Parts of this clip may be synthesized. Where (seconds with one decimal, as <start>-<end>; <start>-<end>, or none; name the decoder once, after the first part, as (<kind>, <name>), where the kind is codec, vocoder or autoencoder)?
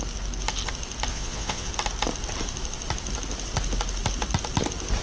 1.1-1.7 (vocoder, Vocos)